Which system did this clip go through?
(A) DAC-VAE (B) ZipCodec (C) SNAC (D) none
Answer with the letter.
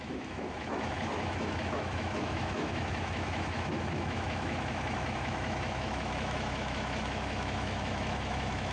A